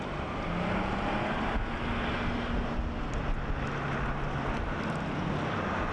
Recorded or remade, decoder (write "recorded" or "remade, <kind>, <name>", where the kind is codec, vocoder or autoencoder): recorded